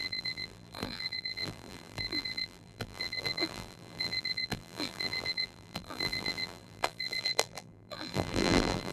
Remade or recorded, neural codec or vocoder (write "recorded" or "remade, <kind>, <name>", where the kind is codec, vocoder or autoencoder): remade, vocoder, BigVGAN v2